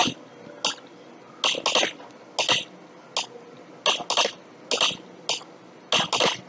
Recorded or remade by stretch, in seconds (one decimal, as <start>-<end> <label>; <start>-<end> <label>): 0.0-6.5 recorded